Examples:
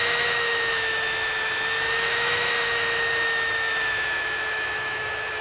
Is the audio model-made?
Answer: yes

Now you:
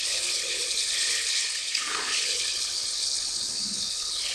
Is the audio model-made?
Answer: yes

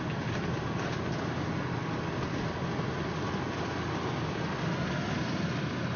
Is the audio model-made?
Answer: no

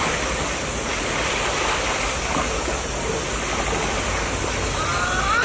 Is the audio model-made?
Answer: no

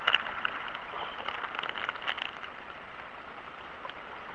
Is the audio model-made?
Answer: no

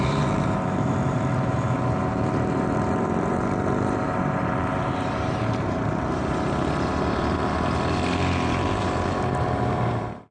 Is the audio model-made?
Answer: yes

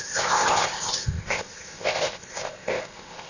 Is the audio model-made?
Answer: yes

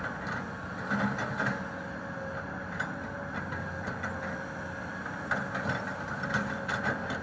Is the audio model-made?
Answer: no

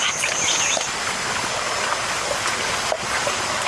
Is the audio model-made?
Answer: no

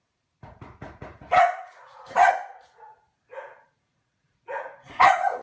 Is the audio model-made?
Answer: yes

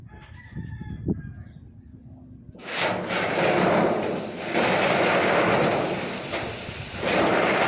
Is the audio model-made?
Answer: no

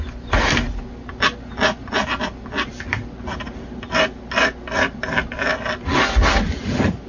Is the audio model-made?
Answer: no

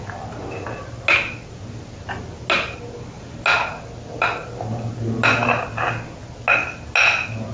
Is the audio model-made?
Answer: no